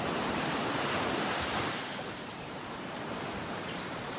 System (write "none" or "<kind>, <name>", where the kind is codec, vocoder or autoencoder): vocoder, BigVGAN v2